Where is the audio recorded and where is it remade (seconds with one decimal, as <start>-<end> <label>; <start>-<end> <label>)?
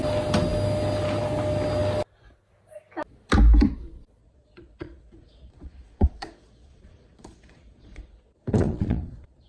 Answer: 0.0-4.2 recorded; 4.2-9.5 remade